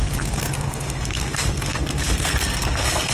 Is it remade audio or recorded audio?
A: remade